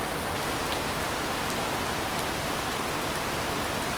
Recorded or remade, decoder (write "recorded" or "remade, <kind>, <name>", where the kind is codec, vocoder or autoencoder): recorded